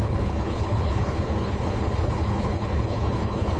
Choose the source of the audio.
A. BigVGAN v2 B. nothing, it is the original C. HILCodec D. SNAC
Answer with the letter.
C